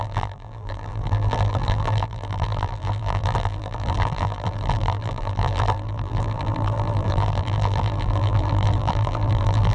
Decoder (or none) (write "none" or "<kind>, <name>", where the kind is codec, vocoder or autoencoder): vocoder, BigVGAN v2